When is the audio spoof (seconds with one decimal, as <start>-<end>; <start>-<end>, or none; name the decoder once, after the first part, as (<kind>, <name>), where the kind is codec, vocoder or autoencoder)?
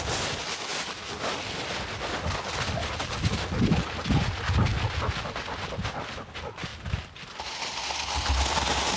none